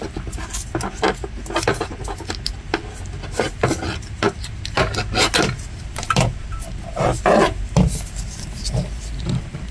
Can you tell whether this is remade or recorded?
recorded